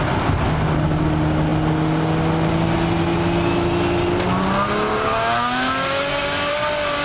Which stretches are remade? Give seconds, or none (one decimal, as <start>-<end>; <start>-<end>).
4.9-6.5